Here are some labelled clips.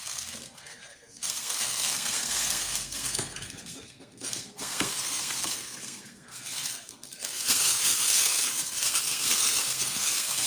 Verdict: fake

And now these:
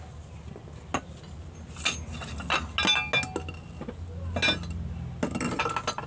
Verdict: real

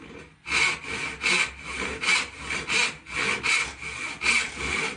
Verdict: real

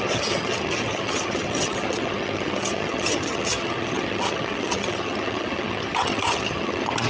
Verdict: fake